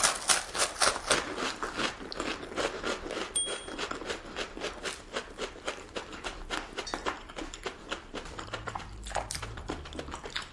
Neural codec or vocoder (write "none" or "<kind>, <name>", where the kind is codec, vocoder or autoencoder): none